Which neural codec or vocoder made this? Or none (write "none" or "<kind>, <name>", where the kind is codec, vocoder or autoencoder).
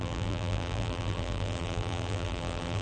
vocoder, BigVGAN v2